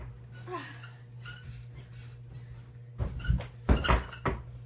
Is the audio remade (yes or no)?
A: no